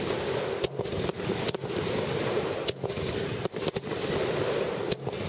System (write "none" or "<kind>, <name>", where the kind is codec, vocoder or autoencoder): none